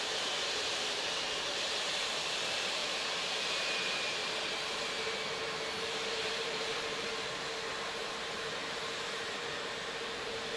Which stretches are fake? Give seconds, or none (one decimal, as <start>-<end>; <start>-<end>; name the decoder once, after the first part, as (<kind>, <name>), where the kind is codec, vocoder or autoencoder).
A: 0.0-4.2 (vocoder, BigVGAN v2); 5.8-10.6